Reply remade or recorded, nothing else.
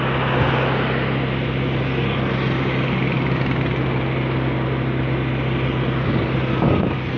recorded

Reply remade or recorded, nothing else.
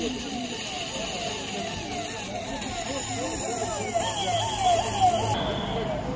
recorded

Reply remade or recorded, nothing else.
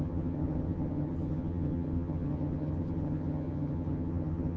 remade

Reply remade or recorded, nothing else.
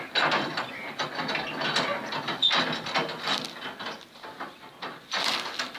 recorded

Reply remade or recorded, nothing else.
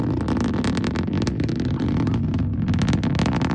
recorded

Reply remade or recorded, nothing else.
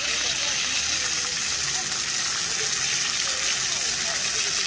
recorded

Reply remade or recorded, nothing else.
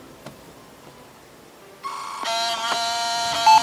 remade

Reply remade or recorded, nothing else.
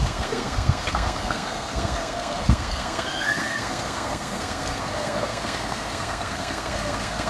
remade